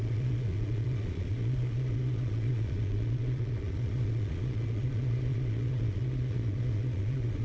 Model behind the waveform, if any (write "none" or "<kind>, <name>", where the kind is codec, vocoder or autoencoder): vocoder, Vocos